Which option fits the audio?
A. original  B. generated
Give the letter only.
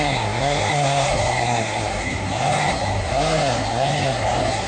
B